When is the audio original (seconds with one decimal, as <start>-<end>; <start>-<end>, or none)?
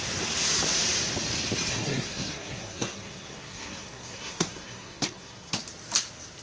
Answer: 0.0-1.7; 5.5-6.4